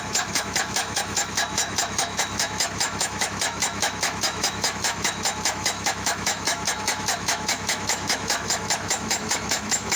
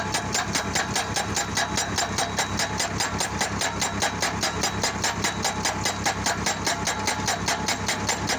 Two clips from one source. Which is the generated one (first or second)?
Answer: first